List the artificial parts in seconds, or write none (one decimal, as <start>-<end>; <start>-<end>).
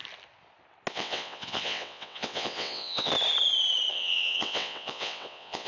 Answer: 0.9-3.1; 3.9-5.7